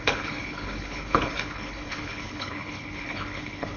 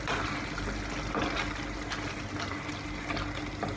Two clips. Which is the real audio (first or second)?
second